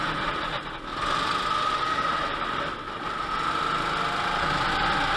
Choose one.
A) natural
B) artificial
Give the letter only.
A